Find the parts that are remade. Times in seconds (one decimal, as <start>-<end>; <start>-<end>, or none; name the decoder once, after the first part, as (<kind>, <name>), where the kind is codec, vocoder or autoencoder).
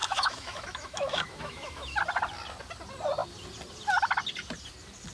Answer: 0.0-2.0 (autoencoder, DAC-VAE)